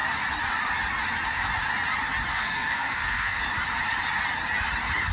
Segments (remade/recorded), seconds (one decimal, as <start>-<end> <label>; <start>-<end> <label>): 0.0-2.3 recorded; 2.3-3.4 remade; 3.4-5.1 recorded

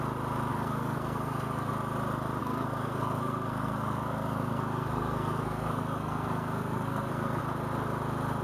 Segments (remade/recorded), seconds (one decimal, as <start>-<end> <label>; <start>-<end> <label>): 0.0-0.5 recorded; 0.5-1.7 remade; 1.7-2.4 recorded; 2.4-7.4 remade; 7.4-8.4 recorded

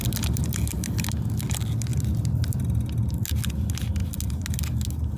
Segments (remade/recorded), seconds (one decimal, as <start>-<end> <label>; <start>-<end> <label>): 0.0-5.2 recorded